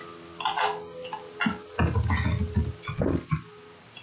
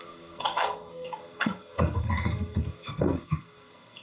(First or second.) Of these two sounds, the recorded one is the first